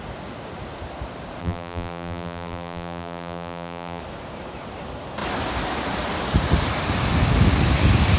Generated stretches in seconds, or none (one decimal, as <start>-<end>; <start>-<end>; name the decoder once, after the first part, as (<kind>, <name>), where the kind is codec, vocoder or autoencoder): 1.4-4.0 (vocoder, BigVGAN v2)